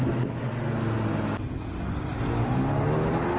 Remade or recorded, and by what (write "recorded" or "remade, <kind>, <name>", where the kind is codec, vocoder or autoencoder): recorded